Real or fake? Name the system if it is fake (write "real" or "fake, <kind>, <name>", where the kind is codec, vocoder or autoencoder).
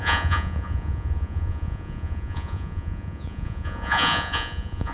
fake, vocoder, Vocos